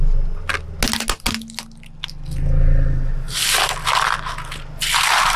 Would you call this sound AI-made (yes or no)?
no